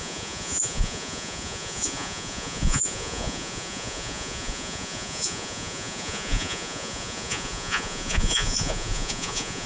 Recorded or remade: remade